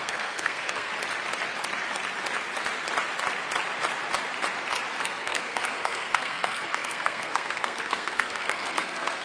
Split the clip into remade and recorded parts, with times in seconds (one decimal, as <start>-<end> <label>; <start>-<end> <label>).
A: 0.0-0.9 remade; 0.9-5.0 recorded; 5.0-9.2 remade